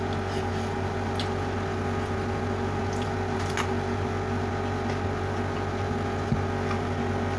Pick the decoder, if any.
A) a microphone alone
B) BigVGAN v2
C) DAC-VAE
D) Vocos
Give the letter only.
A